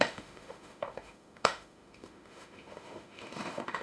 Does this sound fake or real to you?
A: fake